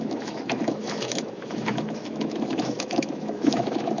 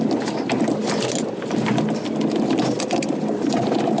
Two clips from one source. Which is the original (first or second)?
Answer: second